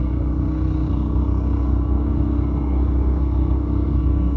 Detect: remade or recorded remade